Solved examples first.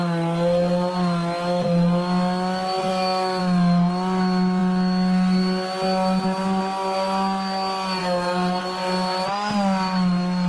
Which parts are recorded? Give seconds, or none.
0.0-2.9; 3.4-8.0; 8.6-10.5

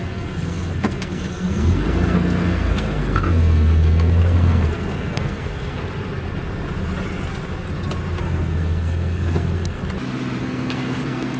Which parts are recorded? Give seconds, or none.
5.8-8.2; 9.8-10.4

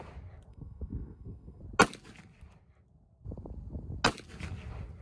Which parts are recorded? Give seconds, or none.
0.0-0.5; 1.6-5.0

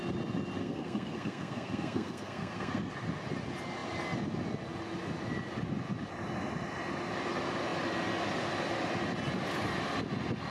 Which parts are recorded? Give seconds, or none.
0.0-0.6; 2.9-10.5

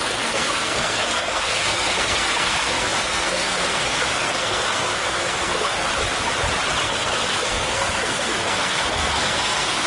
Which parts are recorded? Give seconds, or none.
5.9-6.8

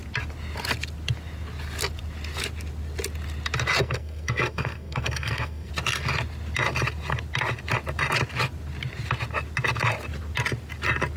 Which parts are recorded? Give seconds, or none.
0.0-3.8; 5.7-11.2

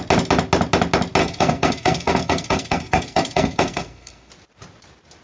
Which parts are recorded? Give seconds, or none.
0.0-1.2; 4.3-5.2